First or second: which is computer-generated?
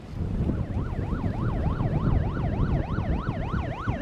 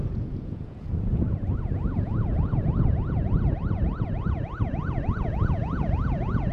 second